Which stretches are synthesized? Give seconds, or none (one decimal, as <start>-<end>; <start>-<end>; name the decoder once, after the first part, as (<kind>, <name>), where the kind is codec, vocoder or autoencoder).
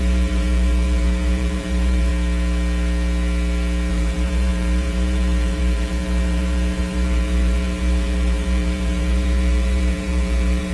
0.0-2.1 (vocoder, BigVGAN v2); 3.9-10.7